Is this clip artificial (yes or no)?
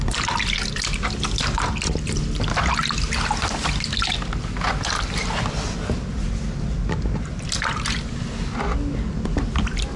no